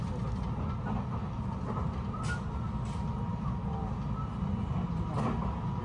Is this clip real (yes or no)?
yes